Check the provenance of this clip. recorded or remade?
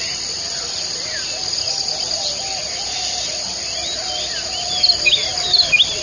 recorded